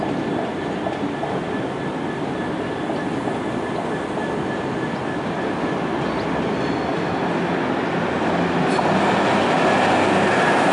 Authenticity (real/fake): real